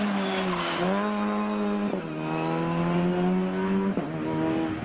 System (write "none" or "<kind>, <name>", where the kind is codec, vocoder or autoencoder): none